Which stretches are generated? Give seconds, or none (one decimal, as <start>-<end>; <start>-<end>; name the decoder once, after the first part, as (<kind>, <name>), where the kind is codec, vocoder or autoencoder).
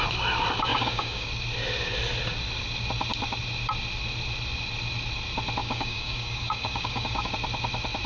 0.7-1.3 (codec, DAC); 5.6-7.3